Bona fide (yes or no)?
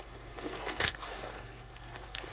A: no